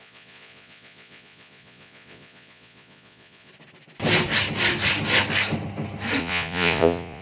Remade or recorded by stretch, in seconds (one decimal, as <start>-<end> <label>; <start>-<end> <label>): 0.0-3.5 remade; 3.5-6.2 recorded; 6.2-7.2 remade